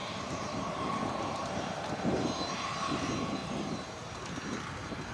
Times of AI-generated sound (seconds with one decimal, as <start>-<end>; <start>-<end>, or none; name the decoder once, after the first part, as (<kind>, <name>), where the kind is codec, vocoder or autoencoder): 0.0-1.9 (vocoder, BigVGAN v2); 3.4-4.2